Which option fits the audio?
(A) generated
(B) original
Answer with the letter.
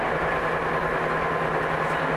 B